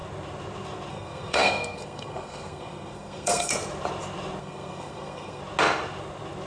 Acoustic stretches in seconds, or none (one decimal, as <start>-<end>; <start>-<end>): 0.0-0.9; 3.5-4.4; 5.4-6.5